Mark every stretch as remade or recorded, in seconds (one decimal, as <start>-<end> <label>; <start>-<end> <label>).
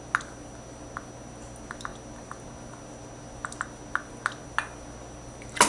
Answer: 0.0-5.7 recorded